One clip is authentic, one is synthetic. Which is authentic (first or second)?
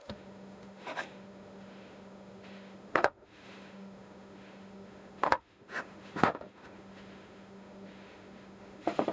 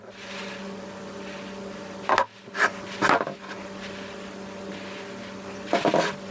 second